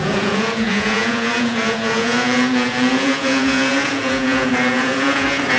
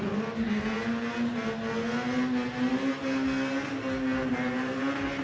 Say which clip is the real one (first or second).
second